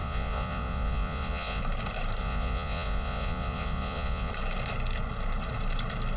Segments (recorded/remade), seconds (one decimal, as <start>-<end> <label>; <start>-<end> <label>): 0.0-1.6 remade; 1.6-2.2 recorded; 2.2-4.3 remade; 4.3-6.2 recorded